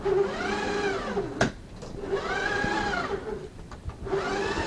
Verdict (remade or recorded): recorded